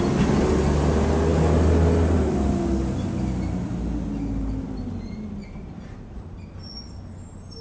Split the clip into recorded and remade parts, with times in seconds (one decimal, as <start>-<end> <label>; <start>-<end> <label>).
0.0-7.6 recorded